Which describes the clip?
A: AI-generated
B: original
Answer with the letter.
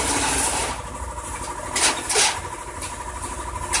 B